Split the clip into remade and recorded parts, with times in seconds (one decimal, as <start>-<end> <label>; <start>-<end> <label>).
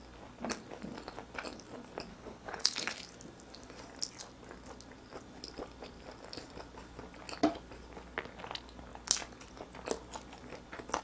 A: 0.0-2.1 recorded; 2.1-3.0 remade; 3.0-11.0 recorded